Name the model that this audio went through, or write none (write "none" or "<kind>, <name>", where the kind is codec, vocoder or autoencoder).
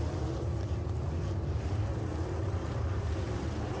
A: vocoder, BigVGAN v2